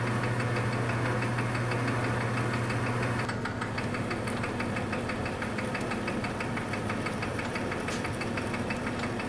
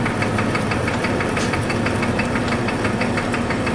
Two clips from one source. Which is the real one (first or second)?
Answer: first